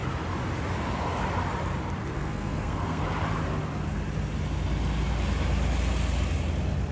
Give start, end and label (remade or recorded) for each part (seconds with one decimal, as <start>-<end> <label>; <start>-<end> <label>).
0.0-2.0 recorded; 2.0-3.0 remade; 3.0-6.9 recorded